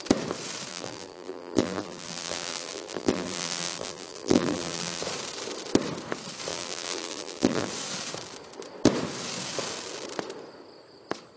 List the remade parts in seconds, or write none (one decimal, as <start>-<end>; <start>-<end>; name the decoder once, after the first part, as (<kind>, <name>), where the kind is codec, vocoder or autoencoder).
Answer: 0.7-5.0 (vocoder, BigVGAN v2); 6.5-7.7